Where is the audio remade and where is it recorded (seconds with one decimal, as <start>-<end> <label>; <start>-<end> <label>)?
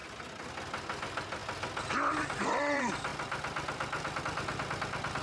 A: 0.0-1.0 recorded; 1.0-1.4 remade; 1.4-2.4 recorded; 2.4-5.2 remade